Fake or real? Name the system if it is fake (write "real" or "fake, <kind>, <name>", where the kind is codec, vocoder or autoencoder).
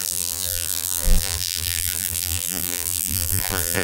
fake, vocoder, BigVGAN v2